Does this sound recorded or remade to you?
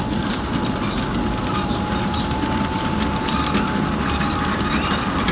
recorded